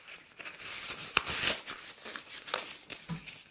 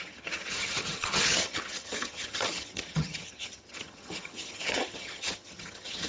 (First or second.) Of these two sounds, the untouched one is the first